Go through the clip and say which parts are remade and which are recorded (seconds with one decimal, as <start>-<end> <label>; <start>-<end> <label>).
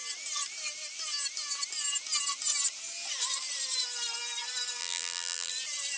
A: 0.0-4.8 recorded; 4.8-5.5 remade; 5.5-6.0 recorded